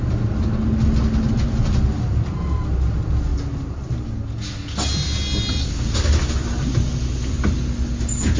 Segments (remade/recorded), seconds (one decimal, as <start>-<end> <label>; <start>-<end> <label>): 0.0-8.4 recorded